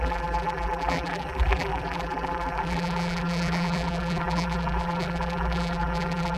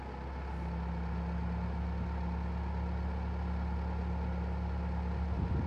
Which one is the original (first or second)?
second